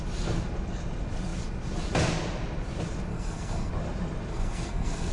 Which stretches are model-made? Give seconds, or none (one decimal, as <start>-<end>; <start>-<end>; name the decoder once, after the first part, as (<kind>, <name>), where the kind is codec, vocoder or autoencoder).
3.1-3.7 (codec, SNAC); 4.3-5.1